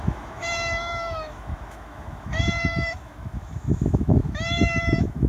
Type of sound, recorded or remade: remade